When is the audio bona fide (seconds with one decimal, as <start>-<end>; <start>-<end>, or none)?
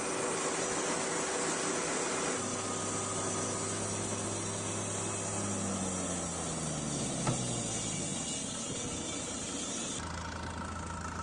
0.0-11.2